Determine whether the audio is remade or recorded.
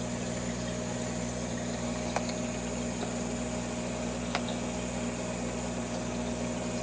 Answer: recorded